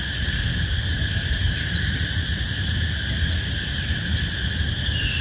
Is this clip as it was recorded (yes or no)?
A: yes